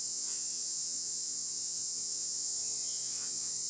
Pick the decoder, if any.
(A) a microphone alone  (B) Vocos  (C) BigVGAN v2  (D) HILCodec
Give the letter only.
B